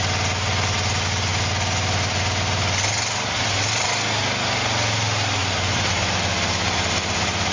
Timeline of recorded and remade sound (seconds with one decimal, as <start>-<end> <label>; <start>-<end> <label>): 0.0-5.4 recorded; 5.4-6.2 remade; 6.2-7.5 recorded